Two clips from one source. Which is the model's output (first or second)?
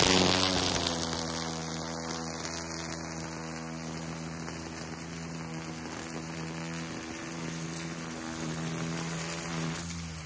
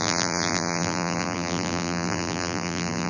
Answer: second